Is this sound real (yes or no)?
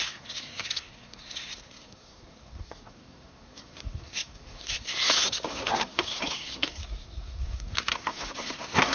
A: no